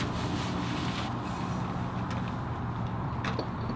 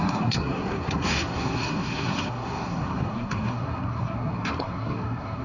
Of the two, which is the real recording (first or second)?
first